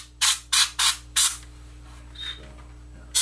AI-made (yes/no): yes